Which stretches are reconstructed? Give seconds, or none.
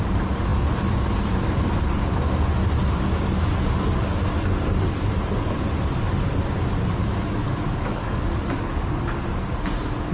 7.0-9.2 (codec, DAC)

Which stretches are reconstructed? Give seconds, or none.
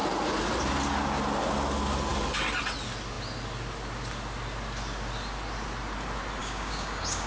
6.4-7.3 (codec, DAC)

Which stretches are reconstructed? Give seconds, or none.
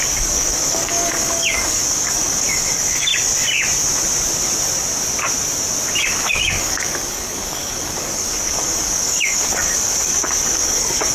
0.0-3.1 (codec, DAC); 6.3-11.1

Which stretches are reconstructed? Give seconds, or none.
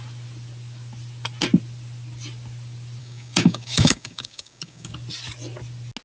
3.0-4.9 (codec, DAC)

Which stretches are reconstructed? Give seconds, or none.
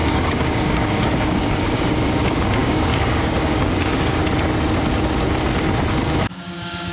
0.0-4.2 (codec, DAC); 6.2-6.9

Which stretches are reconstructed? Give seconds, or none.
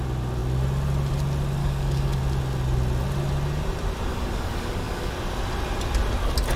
1.6-2.2 (codec, DAC); 4.1-5.1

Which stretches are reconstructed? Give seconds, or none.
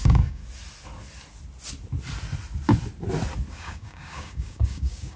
0.0-0.4 (codec, DAC); 3.5-5.2